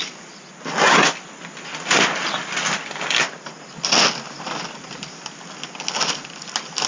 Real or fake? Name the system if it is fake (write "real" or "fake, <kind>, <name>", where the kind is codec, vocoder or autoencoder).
real